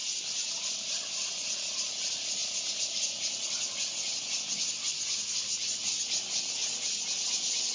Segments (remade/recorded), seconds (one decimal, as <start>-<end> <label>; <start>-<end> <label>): 0.0-7.7 recorded